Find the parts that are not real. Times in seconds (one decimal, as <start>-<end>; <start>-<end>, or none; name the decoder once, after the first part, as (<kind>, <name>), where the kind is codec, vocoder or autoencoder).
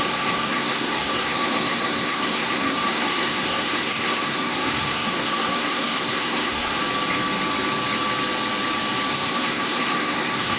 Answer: 0.0-6.8 (codec, SNAC); 9.1-10.6